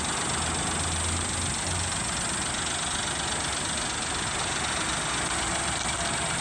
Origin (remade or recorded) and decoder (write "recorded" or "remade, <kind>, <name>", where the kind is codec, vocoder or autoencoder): recorded